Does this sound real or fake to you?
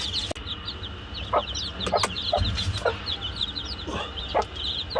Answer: real